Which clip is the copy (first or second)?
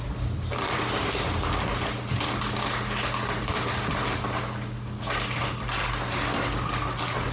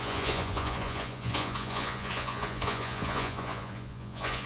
second